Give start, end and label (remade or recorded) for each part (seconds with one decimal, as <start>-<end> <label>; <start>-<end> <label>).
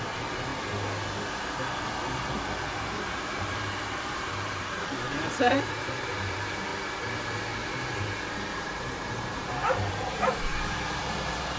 0.0-0.5 remade; 0.5-2.7 recorded; 2.7-6.7 remade; 6.7-8.3 recorded; 8.3-10.5 remade; 10.5-11.0 recorded; 11.0-11.6 remade